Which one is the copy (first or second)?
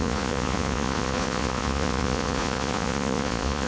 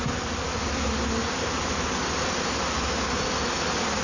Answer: first